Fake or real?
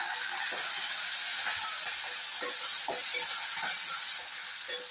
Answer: real